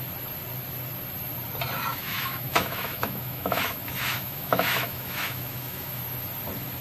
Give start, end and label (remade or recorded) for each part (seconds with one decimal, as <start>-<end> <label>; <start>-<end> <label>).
0.0-1.9 recorded; 1.9-6.0 remade; 6.0-6.8 recorded